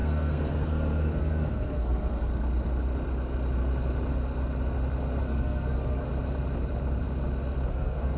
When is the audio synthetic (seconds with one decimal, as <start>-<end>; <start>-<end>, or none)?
0.0-2.3; 5.2-6.1; 7.7-8.2